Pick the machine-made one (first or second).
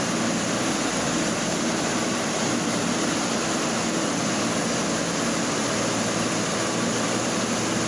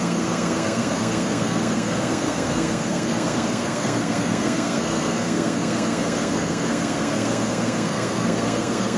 second